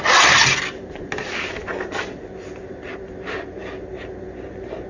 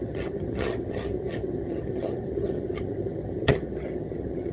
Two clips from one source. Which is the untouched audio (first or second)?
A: first